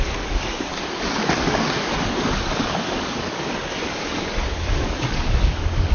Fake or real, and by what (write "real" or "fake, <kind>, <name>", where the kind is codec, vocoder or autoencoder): fake, codec, DAC